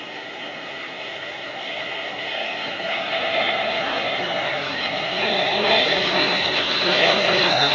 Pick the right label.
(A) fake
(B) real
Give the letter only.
A